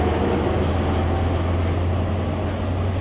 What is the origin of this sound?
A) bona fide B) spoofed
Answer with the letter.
A